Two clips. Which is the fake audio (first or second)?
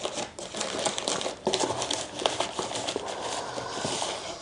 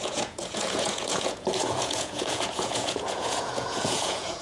second